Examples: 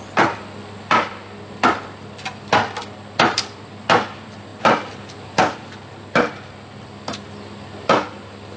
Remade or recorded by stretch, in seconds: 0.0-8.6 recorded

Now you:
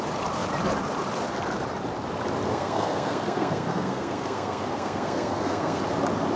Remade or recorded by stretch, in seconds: 0.0-2.5 recorded; 2.5-5.8 remade; 5.8-6.4 recorded

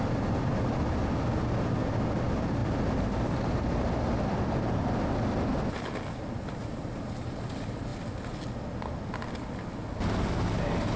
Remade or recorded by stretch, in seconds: 0.0-2.6 recorded; 2.6-4.2 remade; 4.2-6.6 recorded; 6.6-7.4 remade; 7.4-11.0 recorded

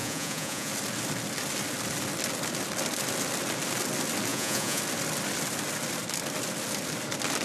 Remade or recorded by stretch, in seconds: 0.0-0.7 remade; 0.7-4.3 recorded; 4.3-4.8 remade; 4.8-7.4 recorded